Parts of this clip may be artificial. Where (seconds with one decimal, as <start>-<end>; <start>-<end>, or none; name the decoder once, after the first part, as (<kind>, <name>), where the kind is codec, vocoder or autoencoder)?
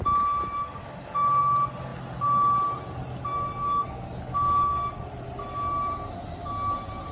0.4-1.4 (codec, DAC); 3.3-5.0